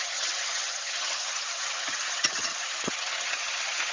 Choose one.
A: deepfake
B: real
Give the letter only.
A